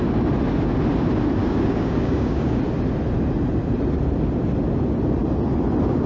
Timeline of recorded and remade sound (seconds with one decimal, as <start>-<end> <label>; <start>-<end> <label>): 0.0-1.4 recorded; 1.4-2.6 remade; 2.6-6.1 recorded